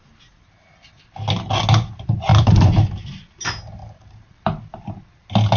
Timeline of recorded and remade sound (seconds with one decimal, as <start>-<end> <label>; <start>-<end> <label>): 0.0-2.3 recorded; 2.3-3.3 remade; 3.3-3.8 recorded; 3.8-4.9 remade; 4.9-5.6 recorded